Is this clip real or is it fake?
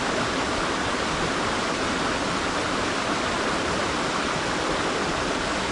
real